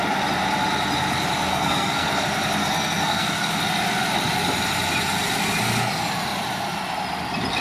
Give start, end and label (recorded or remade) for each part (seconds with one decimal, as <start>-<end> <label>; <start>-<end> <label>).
0.0-1.5 recorded; 1.5-2.2 remade; 2.2-2.6 recorded; 2.6-3.5 remade; 3.5-7.6 recorded